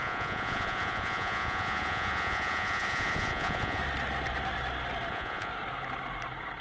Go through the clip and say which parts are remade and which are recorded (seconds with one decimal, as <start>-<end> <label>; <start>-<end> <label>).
0.0-3.8 remade; 3.8-5.1 recorded; 5.1-5.5 remade; 5.5-6.6 recorded